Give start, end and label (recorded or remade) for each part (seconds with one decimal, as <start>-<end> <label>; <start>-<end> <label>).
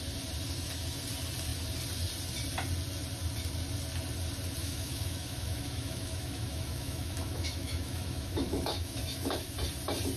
0.0-4.6 recorded; 4.6-9.5 remade; 9.5-10.2 recorded